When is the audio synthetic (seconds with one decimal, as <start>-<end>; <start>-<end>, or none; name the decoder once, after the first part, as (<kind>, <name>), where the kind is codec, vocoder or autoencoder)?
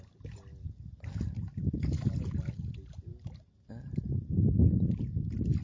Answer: none